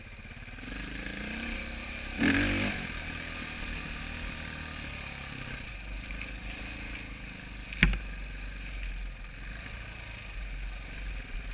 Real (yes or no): yes